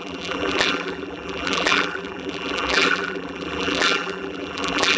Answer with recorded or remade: remade